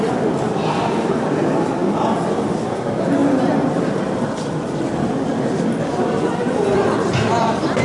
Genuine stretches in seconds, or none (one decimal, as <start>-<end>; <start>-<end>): 0.0-7.8